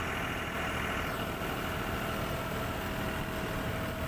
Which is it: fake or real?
real